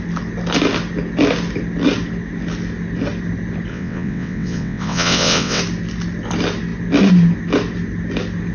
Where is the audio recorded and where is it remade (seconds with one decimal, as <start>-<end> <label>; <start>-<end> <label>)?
0.0-3.7 recorded; 3.7-5.6 remade; 5.6-8.5 recorded